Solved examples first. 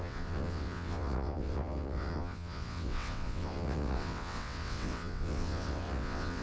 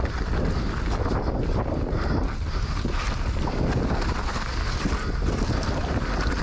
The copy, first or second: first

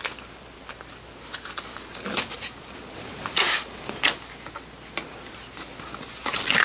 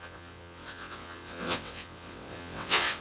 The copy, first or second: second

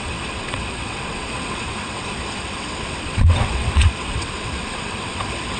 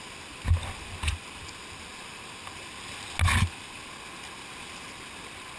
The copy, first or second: first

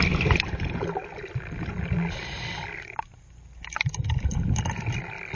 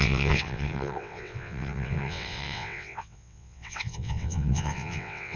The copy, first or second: second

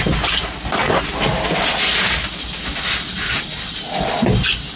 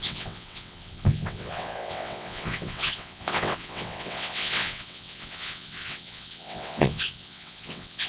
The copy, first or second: second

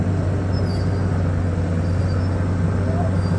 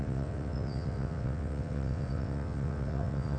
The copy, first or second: second